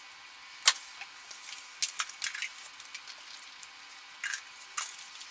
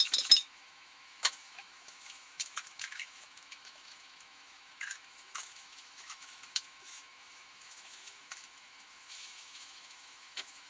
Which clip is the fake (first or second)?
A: second